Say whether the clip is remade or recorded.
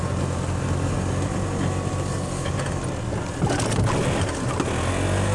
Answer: recorded